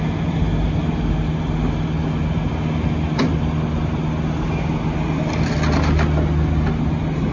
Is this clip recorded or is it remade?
recorded